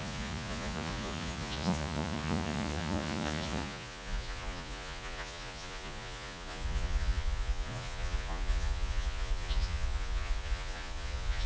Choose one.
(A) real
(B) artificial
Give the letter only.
B